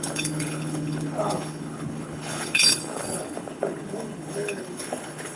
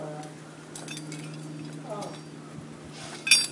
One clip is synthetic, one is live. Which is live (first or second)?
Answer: second